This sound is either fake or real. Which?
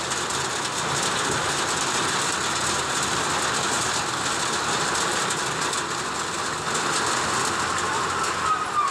real